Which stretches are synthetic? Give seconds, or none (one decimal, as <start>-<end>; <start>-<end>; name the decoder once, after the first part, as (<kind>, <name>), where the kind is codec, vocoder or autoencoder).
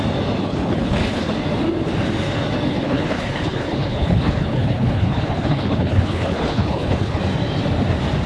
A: 0.4-1.3 (codec, HILCodec); 2.7-7.2